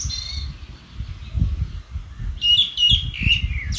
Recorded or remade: recorded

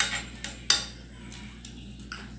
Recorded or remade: recorded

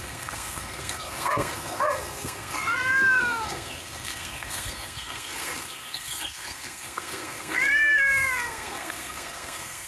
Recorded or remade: remade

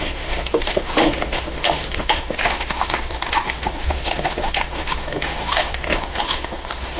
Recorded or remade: remade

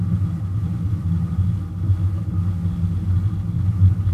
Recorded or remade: recorded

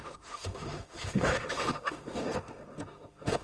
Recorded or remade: remade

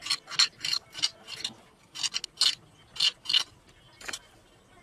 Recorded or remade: recorded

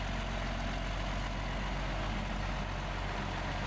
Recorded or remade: recorded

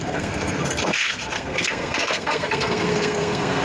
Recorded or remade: remade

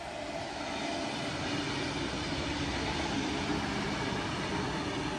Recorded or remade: recorded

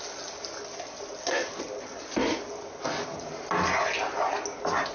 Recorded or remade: recorded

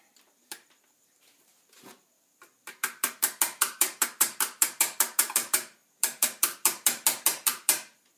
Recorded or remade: remade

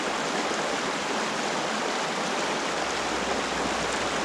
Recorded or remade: recorded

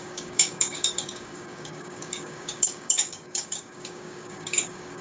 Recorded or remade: remade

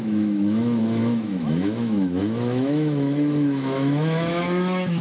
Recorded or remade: remade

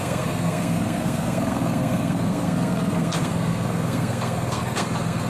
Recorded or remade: remade